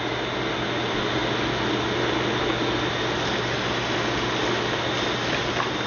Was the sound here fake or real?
real